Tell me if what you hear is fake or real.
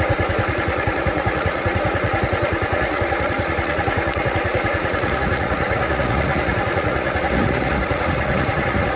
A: fake